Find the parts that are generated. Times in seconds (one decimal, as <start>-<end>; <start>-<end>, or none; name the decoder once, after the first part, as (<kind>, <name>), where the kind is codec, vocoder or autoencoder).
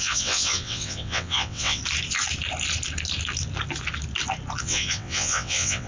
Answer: 0.0-1.8 (vocoder, WaveNeXt); 4.6-5.9